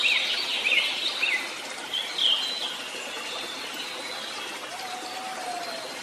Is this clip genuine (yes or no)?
yes